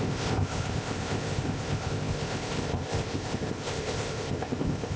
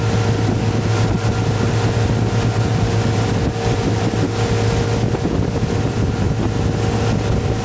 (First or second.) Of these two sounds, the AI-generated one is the first